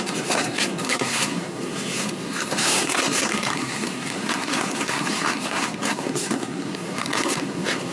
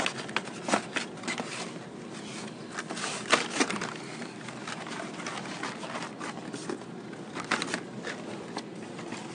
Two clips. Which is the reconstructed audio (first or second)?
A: first